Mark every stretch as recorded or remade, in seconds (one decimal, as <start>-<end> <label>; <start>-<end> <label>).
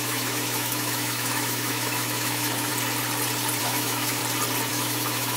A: 0.0-2.7 remade; 2.7-3.6 recorded; 3.6-4.2 remade; 4.2-4.7 recorded; 4.7-5.4 remade